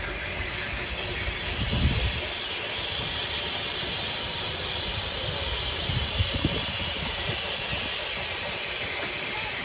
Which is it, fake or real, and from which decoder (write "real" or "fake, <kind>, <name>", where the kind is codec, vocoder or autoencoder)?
fake, vocoder, BigVGAN v2